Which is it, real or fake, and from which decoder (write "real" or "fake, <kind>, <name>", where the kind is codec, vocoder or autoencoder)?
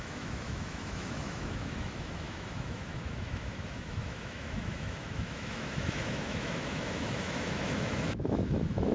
fake, autoencoder, DAC-VAE